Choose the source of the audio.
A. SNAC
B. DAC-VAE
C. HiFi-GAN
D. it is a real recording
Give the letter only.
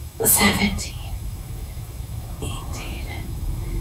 B